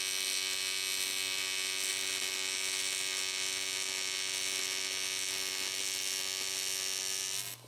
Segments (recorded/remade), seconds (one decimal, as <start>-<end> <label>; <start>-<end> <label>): 0.0-7.7 recorded